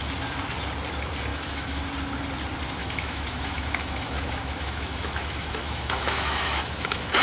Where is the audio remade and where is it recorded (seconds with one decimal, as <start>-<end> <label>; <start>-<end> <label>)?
0.0-1.3 recorded; 1.3-1.8 remade; 1.8-2.8 recorded; 2.8-7.2 remade